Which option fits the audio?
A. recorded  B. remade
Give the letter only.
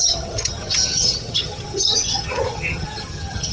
B